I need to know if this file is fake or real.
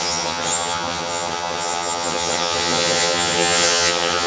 fake